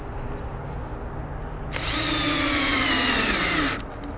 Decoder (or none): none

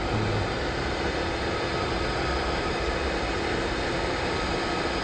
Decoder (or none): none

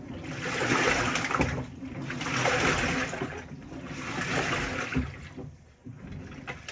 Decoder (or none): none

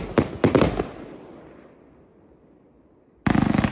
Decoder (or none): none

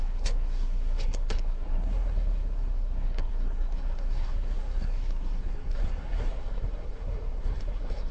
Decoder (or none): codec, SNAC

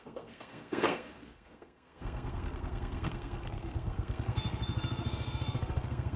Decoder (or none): codec, SNAC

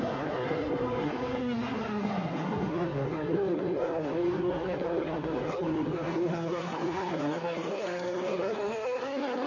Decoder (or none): codec, SNAC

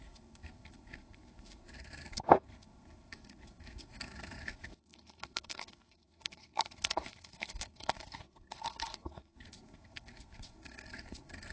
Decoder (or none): codec, SNAC